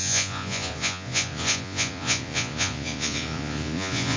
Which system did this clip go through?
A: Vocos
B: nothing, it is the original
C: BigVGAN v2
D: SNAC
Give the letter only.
A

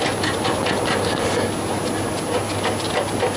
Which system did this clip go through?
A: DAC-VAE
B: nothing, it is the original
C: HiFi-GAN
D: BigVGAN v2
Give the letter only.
B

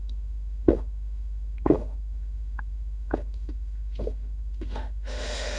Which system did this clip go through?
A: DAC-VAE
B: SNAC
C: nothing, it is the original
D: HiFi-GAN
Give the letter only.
A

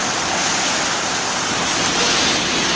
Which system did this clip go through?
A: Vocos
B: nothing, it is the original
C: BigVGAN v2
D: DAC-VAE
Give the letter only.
B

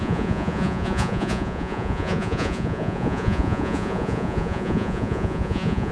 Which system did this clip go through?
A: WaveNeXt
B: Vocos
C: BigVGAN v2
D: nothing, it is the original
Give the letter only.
B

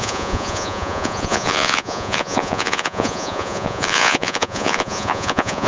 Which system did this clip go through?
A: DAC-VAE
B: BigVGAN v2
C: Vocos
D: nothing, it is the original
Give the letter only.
C